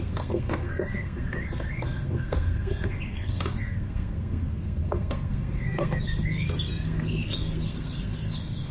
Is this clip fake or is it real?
fake